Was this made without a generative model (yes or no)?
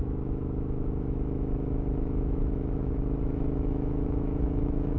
no